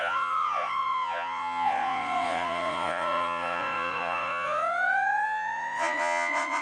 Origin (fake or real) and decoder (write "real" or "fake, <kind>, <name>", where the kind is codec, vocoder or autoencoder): fake, vocoder, Vocos